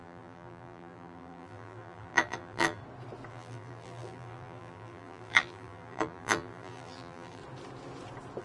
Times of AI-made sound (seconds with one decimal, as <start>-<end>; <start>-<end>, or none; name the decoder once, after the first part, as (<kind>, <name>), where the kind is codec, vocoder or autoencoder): 0.0-2.8 (vocoder, BigVGAN v2); 3.3-7.4